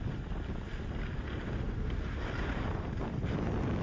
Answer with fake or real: real